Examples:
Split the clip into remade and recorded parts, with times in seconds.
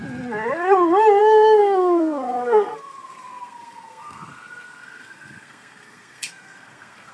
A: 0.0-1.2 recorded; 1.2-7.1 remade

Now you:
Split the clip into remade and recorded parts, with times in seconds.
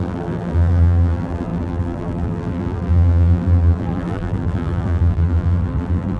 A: 0.0-6.2 remade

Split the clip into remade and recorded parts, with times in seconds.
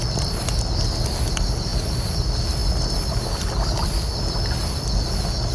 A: 0.0-5.5 recorded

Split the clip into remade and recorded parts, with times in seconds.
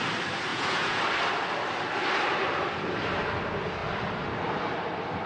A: 0.0-0.5 recorded; 0.5-1.0 remade; 1.0-5.3 recorded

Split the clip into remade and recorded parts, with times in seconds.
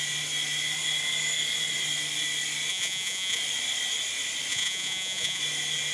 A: 0.0-2.7 recorded; 2.7-3.4 remade; 3.4-4.5 recorded; 4.5-5.4 remade; 5.4-5.9 recorded